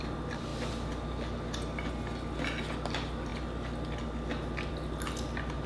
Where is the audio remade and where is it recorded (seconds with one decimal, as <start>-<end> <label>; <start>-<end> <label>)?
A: 0.0-0.5 recorded; 0.5-1.9 remade; 1.9-5.7 recorded

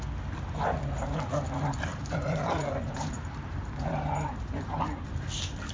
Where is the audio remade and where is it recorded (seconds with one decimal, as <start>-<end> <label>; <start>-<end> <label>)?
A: 0.0-1.9 recorded; 1.9-5.3 remade; 5.3-5.7 recorded

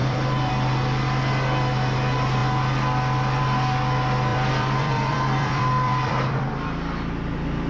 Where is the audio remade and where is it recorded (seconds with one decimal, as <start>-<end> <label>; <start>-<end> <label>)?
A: 0.0-0.5 remade; 0.5-4.3 recorded; 4.3-6.5 remade; 6.5-7.7 recorded

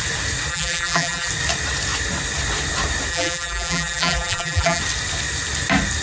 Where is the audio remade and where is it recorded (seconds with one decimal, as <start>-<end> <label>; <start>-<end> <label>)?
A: 0.0-0.5 recorded; 0.5-1.3 remade; 1.3-3.1 recorded; 3.1-4.8 remade; 4.8-6.0 recorded

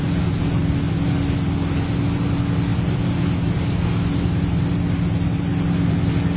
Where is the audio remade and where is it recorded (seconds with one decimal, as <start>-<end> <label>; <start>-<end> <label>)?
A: 0.0-6.4 recorded

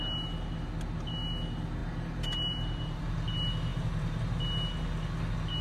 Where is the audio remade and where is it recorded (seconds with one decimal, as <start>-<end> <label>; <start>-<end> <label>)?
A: 0.0-1.8 recorded; 1.8-3.0 remade; 3.0-3.7 recorded; 3.7-4.4 remade; 4.4-5.6 recorded

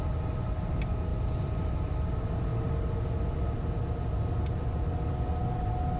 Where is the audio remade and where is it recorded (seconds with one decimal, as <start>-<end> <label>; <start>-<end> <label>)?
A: 0.0-1.1 recorded; 1.1-2.1 remade; 2.1-6.0 recorded

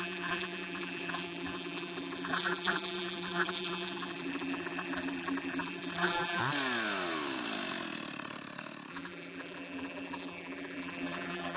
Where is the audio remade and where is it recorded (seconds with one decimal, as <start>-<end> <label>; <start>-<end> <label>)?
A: 0.0-6.4 remade; 6.4-8.9 recorded; 8.9-11.6 remade